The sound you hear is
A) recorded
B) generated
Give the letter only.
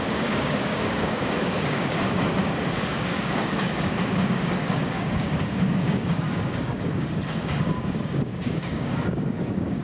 B